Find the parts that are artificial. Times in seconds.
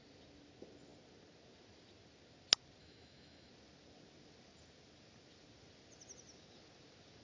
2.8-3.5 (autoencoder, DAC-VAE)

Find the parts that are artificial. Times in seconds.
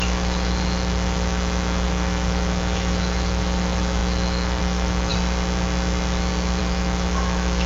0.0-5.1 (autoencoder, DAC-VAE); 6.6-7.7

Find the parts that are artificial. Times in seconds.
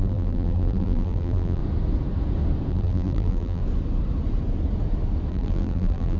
0.0-1.6 (vocoder, BigVGAN v2); 2.7-3.6; 5.3-6.2